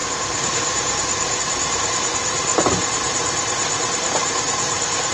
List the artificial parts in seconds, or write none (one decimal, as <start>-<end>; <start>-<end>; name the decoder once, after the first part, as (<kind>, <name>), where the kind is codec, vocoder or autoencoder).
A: 0.0-5.1 (vocoder, BigVGAN v2)